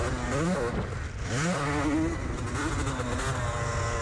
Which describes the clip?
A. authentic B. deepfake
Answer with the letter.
A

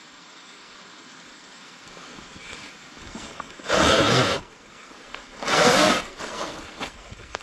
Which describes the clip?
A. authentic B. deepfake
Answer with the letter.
B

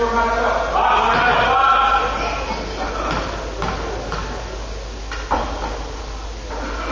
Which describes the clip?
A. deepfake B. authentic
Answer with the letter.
B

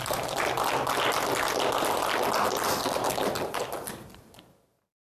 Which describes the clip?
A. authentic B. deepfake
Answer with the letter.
A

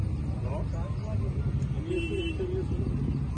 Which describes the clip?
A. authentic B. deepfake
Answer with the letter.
A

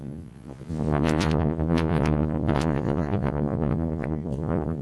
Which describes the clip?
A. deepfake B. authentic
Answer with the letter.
A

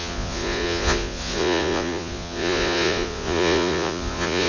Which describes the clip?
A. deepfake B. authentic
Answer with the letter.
A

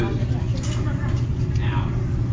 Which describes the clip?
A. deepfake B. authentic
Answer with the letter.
B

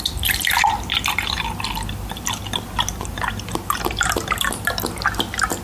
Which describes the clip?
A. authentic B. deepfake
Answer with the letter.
A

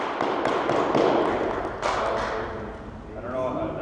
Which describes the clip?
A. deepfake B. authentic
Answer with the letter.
B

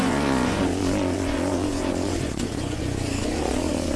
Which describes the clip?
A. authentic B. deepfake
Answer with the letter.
B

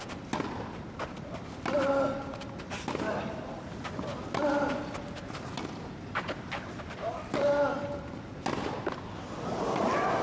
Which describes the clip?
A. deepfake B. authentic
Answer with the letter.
B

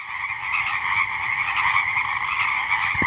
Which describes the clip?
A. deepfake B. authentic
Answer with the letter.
B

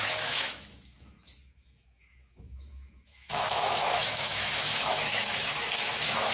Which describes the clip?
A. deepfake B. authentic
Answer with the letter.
A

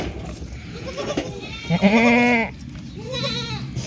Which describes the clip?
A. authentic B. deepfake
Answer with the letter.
A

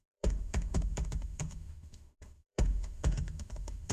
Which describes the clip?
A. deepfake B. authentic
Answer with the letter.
A